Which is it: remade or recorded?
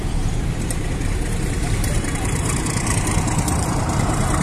remade